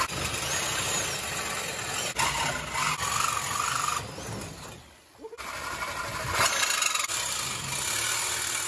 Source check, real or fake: real